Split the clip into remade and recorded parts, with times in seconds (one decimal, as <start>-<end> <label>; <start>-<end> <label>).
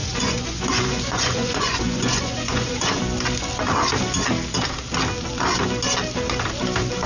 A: 0.0-3.0 remade; 3.0-7.1 recorded